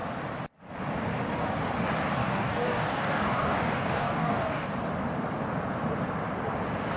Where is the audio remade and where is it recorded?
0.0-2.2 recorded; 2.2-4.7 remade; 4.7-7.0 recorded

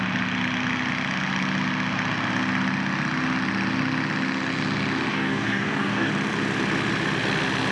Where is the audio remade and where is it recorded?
0.0-5.1 recorded; 5.1-6.1 remade; 6.1-7.7 recorded